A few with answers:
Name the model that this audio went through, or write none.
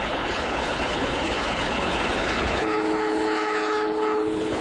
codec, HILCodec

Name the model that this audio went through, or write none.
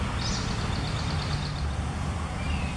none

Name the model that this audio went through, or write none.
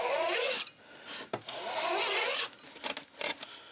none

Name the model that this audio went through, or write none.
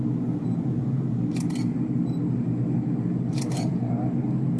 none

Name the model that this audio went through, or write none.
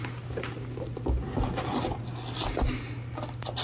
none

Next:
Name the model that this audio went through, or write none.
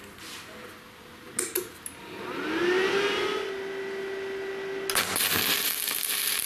none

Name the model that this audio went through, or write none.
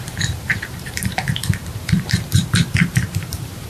vocoder, BigVGAN v2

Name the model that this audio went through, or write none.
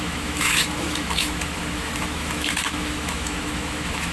autoencoder, DAC-VAE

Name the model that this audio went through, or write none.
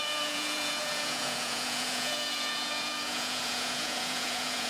vocoder, Vocos